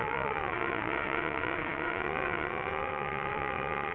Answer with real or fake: fake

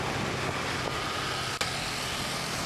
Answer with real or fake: real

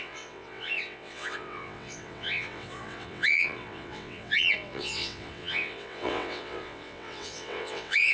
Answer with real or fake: fake